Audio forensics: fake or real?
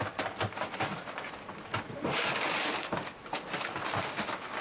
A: real